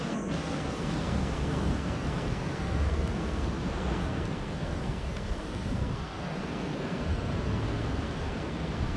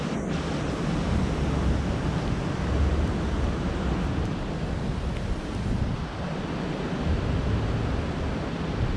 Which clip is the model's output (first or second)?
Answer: first